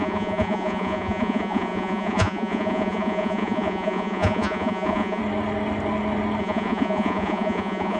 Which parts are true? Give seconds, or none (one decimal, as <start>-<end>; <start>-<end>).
5.2-6.4